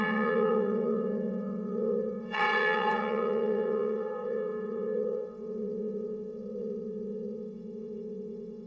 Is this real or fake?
fake